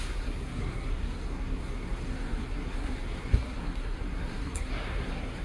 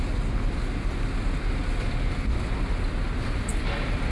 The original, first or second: second